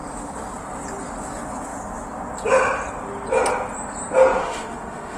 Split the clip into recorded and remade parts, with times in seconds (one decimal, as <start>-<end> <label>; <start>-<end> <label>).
0.0-4.4 recorded; 4.4-5.2 remade